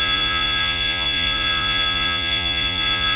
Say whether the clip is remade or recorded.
remade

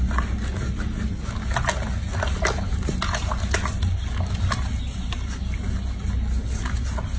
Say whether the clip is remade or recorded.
recorded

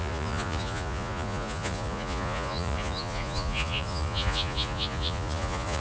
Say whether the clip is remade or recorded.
remade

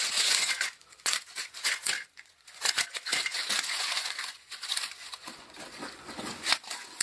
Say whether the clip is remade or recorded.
remade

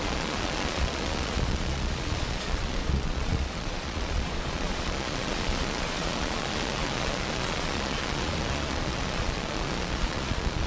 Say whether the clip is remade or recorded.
remade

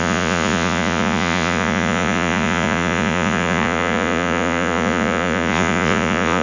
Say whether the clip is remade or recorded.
remade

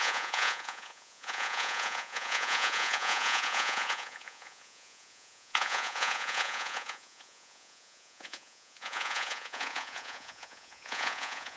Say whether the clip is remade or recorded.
remade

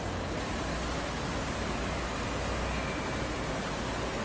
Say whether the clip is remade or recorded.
recorded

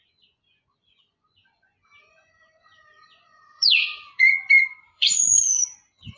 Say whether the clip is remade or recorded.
remade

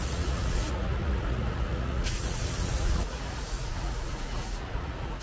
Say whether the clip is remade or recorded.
remade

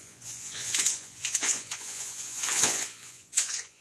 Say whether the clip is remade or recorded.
remade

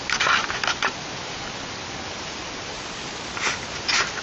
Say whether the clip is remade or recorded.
recorded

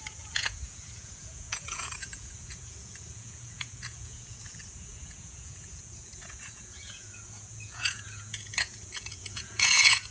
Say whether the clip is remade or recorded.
remade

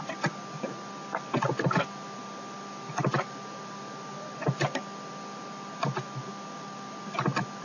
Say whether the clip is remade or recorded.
recorded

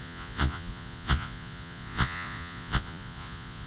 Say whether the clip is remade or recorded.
remade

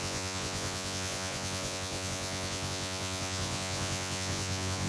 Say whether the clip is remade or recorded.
remade